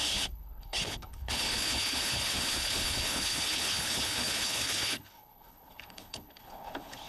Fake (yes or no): yes